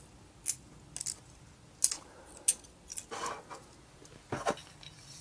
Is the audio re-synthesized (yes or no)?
no